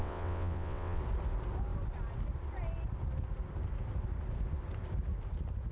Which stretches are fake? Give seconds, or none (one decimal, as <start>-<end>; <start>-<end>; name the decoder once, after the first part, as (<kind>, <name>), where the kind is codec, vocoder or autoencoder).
0.0-1.0 (vocoder, WaveNeXt)